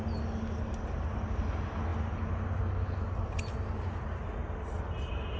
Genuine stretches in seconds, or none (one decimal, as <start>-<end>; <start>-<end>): 0.0-5.4